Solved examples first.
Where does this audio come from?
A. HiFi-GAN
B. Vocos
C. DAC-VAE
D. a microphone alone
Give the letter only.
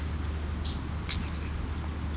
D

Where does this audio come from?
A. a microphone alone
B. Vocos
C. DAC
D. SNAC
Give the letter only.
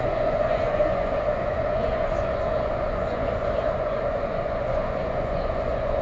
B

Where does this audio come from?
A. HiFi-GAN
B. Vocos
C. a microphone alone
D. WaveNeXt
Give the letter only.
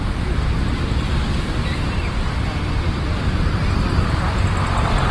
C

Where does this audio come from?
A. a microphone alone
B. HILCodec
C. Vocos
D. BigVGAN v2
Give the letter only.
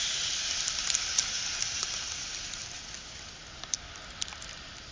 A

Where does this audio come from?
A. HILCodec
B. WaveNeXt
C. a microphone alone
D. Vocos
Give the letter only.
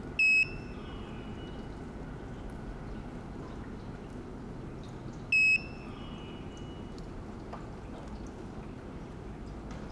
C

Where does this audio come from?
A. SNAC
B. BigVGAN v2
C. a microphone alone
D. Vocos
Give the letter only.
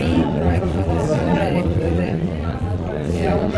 D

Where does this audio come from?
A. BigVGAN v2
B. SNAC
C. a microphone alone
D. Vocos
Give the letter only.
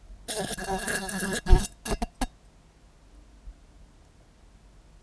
C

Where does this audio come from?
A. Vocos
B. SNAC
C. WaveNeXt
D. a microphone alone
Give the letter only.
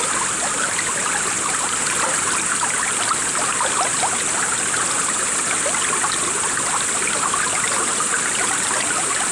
D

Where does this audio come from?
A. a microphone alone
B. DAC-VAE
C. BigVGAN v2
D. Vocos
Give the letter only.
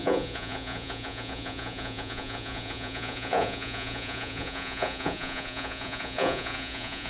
D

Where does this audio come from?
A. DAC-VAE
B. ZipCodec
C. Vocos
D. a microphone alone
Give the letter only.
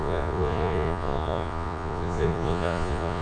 C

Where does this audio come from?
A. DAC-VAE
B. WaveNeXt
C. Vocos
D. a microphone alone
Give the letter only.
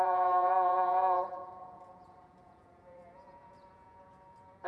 C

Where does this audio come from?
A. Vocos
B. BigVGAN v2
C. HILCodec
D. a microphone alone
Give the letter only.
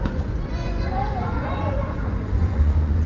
A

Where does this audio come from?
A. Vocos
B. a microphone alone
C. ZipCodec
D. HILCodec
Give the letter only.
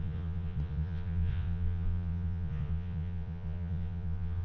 A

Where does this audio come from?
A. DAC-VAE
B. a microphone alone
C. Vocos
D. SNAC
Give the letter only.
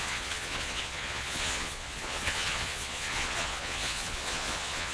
C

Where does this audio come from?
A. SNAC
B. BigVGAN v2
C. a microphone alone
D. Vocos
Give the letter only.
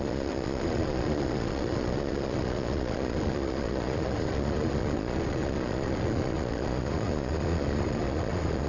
D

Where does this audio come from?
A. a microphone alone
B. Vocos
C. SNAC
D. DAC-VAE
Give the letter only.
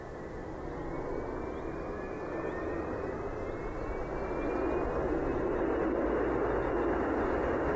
A